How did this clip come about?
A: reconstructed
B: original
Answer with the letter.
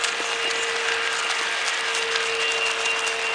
B